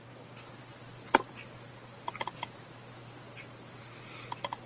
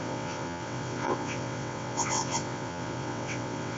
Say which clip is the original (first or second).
first